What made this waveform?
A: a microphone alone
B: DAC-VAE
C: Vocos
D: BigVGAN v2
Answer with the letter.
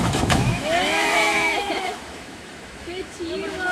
B